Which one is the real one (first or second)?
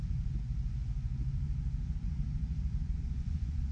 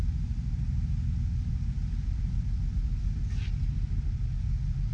second